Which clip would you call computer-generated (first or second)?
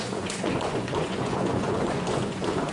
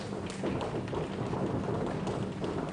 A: first